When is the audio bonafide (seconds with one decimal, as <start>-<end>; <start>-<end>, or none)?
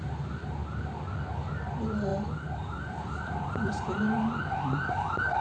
0.6-1.5